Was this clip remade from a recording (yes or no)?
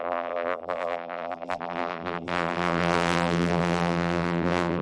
yes